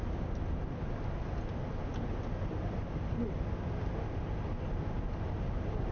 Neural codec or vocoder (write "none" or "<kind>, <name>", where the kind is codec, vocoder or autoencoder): none